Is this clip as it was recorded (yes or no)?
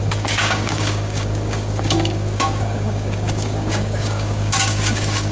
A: no